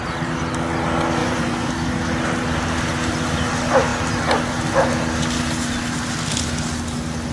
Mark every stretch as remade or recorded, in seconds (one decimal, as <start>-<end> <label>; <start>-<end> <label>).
0.0-1.2 recorded; 1.2-1.7 remade; 1.7-7.3 recorded